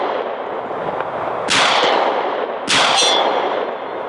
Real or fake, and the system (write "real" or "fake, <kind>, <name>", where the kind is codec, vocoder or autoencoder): real